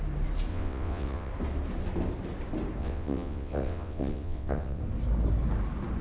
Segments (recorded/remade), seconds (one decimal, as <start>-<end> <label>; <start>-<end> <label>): 0.0-0.5 recorded; 0.5-1.3 remade; 1.3-2.8 recorded; 2.8-4.8 remade; 4.8-6.0 recorded